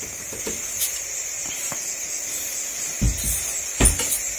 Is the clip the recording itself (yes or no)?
yes